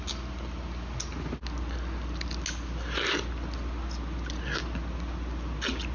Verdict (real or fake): real